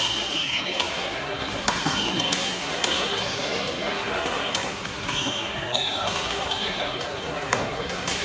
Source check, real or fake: fake